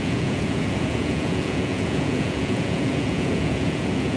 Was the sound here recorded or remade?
remade